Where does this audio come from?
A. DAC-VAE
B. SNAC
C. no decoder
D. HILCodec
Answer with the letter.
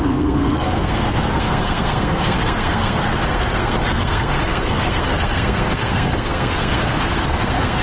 B